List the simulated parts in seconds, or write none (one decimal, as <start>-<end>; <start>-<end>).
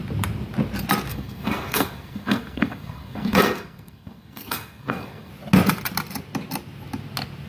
1.1-5.3